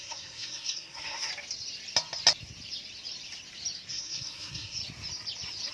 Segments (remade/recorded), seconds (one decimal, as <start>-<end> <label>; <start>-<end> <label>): 0.0-1.3 remade; 1.3-3.9 recorded; 3.9-4.8 remade; 4.8-5.7 recorded

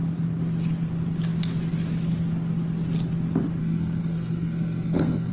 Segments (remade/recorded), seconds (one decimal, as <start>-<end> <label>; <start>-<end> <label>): 0.0-3.6 recorded; 3.6-5.3 remade

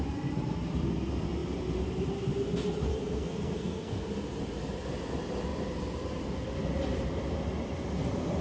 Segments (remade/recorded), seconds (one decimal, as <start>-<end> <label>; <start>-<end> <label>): 0.0-2.9 recorded; 2.9-4.1 remade; 4.1-8.4 recorded